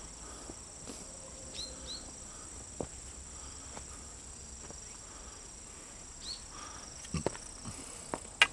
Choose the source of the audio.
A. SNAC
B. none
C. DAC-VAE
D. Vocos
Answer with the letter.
B